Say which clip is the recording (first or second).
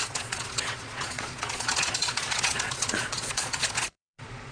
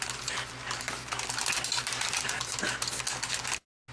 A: second